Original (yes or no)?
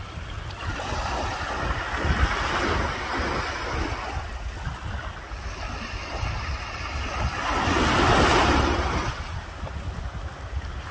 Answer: yes